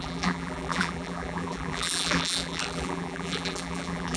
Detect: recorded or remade remade